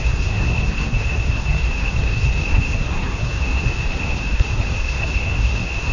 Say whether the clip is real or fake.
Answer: fake